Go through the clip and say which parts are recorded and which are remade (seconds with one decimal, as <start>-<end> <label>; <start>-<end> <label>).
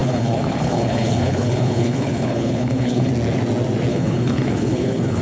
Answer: 0.0-3.1 remade; 3.1-3.9 recorded; 3.9-5.2 remade